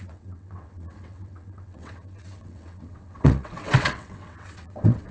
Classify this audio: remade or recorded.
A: remade